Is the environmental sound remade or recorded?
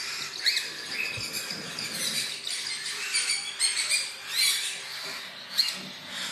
remade